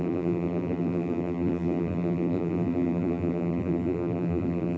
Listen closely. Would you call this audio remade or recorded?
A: remade